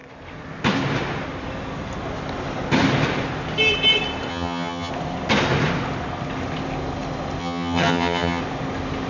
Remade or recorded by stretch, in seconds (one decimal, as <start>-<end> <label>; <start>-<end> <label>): 0.0-4.3 recorded; 4.3-4.9 remade; 4.9-7.4 recorded; 7.4-8.4 remade; 8.4-9.1 recorded